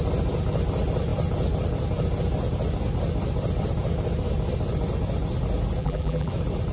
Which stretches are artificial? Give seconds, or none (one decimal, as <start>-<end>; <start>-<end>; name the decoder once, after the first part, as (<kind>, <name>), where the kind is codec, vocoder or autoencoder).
5.8-6.3 (vocoder, BigVGAN v2)